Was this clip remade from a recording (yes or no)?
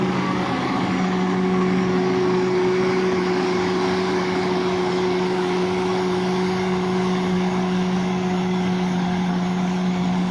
yes